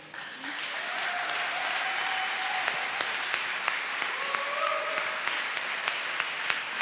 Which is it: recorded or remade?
recorded